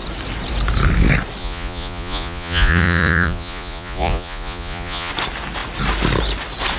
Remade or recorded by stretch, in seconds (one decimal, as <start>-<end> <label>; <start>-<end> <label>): 0.0-1.4 recorded; 1.4-5.1 remade; 5.1-6.8 recorded